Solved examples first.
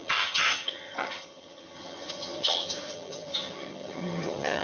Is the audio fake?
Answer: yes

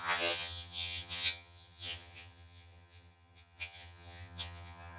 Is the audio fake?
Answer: yes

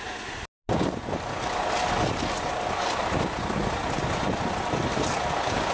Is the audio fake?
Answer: no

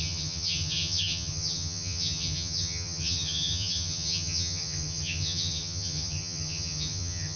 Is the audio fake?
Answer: yes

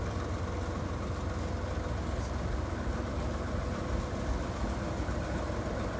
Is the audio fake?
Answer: no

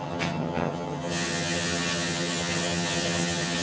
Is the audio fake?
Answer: yes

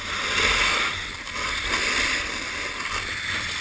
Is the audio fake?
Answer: no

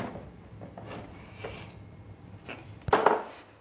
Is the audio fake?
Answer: no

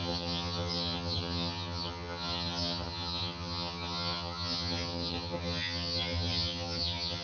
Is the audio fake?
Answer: yes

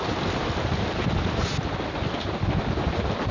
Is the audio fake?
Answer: no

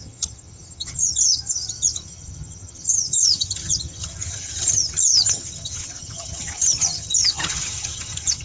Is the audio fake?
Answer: yes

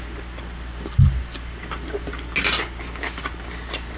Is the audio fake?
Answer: no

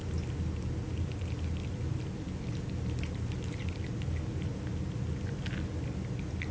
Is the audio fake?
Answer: no